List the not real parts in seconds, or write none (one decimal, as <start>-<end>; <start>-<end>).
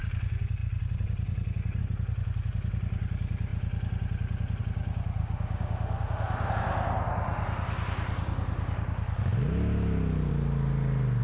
5.2-6.5